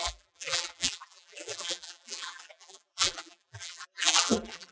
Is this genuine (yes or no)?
no